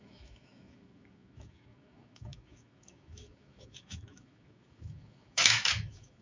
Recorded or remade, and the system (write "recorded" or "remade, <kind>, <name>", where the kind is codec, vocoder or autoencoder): remade, autoencoder, DAC-VAE